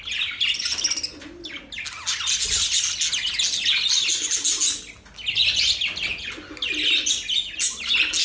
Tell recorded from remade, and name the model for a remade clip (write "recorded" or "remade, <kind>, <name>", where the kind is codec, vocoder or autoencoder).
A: recorded